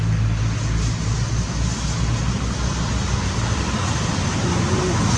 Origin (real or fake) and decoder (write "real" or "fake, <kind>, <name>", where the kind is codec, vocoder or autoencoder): real